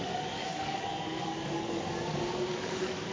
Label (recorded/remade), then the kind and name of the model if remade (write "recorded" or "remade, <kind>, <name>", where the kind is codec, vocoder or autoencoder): remade, codec, DAC